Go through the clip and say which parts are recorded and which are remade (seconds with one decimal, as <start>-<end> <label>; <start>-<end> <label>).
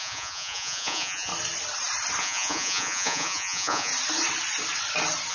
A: 0.0-1.3 remade; 1.3-2.2 recorded; 2.2-3.9 remade; 3.9-5.3 recorded